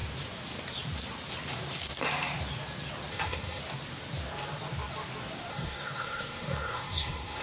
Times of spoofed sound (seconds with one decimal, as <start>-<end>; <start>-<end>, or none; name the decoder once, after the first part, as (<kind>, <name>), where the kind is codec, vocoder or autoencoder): 3.1-3.6 (codec, SNAC); 5.5-7.4